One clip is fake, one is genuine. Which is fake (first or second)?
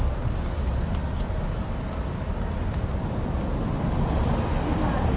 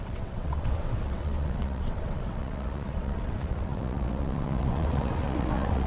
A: second